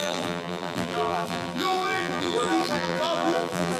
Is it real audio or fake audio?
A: fake